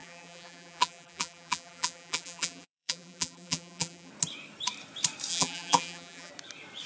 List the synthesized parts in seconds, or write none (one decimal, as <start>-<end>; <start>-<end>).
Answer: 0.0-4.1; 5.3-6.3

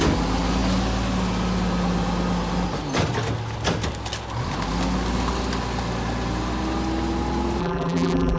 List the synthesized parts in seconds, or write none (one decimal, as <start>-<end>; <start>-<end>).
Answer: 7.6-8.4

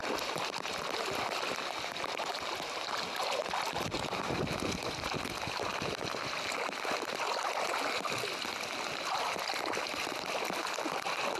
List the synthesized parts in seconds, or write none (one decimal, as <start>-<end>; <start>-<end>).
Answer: none